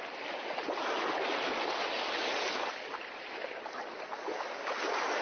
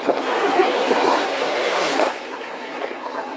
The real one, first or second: first